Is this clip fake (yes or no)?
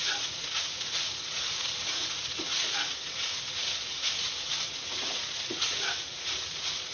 yes